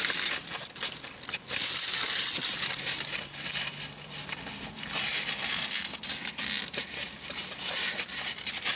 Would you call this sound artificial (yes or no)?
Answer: no